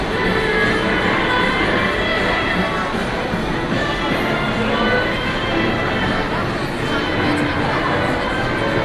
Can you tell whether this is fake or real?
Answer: real